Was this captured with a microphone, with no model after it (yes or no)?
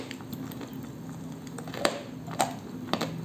yes